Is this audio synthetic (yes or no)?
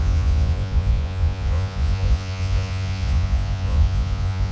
yes